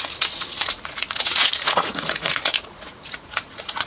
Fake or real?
fake